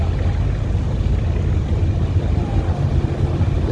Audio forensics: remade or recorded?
recorded